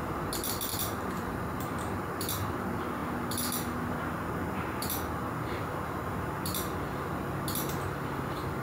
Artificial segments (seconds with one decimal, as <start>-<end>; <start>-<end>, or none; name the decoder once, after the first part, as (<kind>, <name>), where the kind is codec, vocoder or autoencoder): 0.7-1.4 (vocoder, BigVGAN v2)